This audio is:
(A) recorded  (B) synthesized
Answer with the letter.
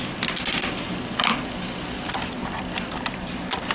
A